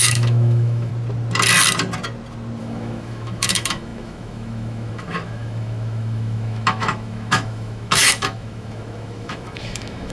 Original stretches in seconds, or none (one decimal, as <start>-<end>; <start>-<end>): 0.9-2.6